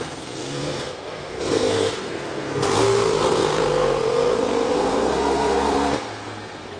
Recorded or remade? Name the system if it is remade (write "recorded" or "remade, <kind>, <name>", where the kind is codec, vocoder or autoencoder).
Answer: remade, codec, SNAC